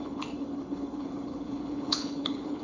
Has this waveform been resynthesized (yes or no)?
yes